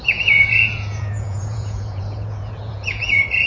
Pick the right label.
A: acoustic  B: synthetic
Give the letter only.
B